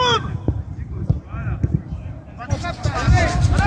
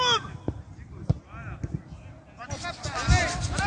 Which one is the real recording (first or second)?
second